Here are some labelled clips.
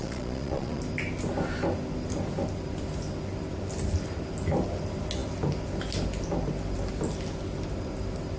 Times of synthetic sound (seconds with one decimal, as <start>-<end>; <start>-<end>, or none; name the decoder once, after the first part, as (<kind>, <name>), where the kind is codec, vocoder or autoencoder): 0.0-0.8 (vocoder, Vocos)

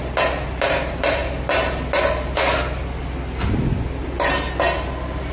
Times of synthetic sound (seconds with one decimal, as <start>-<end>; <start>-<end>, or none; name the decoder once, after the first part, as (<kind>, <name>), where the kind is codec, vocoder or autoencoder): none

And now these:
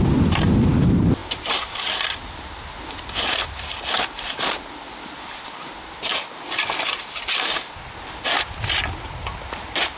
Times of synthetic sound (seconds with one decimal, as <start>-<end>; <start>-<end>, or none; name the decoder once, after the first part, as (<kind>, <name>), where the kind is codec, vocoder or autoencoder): none

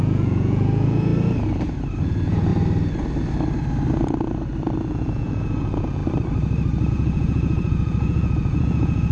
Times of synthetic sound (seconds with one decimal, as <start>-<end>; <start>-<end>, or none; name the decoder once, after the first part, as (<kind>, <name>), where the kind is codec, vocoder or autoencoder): 0.0-1.1 (vocoder, Vocos); 2.0-2.5; 4.9-6.0; 6.9-9.1